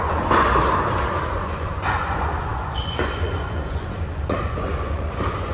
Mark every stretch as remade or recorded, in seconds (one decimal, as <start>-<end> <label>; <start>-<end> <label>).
0.0-0.5 remade; 0.5-1.3 recorded; 1.3-5.5 remade